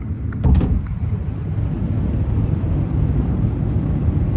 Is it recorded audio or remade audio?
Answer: recorded